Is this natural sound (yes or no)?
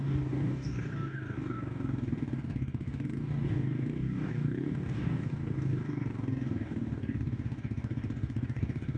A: no